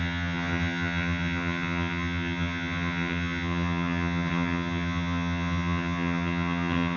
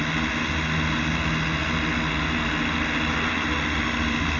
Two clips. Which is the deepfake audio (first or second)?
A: first